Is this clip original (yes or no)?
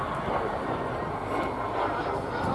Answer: yes